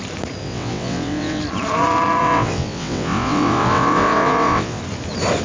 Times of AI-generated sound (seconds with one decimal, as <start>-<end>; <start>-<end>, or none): 0.4-1.4; 2.2-4.8